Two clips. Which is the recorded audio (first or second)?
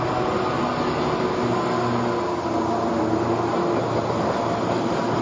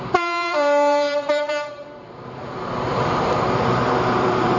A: first